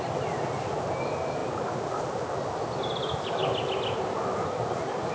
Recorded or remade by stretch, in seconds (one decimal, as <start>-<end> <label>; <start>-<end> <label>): 0.0-5.1 recorded